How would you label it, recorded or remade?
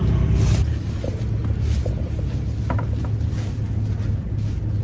recorded